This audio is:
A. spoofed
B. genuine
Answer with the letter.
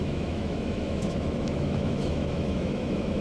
A